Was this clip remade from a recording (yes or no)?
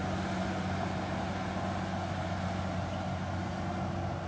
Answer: no